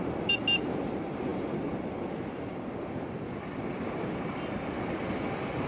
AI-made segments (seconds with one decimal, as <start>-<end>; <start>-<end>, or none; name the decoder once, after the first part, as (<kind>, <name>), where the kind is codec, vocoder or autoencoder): none